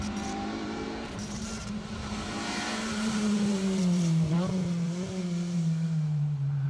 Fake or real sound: fake